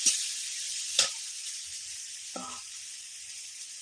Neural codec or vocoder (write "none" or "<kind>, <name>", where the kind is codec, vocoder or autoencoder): none